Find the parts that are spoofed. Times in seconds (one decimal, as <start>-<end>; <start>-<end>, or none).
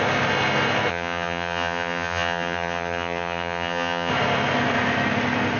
0.9-4.1